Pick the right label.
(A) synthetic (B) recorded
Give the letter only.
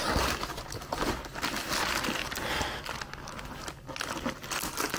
B